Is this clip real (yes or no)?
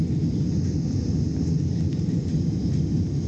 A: yes